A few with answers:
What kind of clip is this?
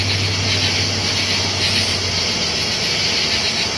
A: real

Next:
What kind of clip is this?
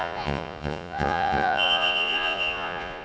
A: fake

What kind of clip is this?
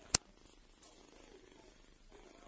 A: real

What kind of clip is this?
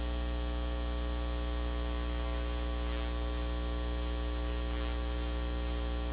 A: real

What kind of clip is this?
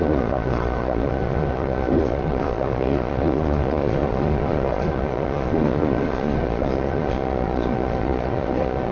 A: fake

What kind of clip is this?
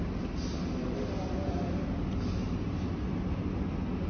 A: real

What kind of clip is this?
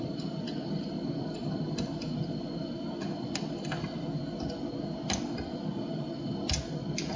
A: real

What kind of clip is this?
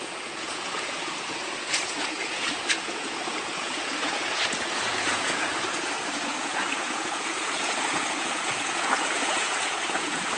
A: fake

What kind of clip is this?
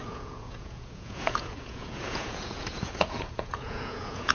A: fake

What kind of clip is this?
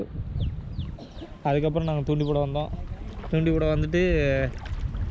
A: real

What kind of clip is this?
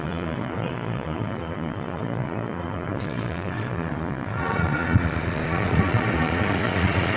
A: fake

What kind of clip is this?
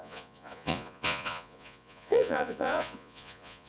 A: fake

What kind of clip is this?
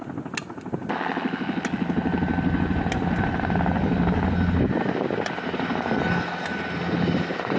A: real